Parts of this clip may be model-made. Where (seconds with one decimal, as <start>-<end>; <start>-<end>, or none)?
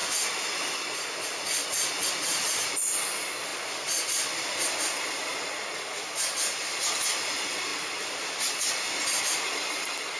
none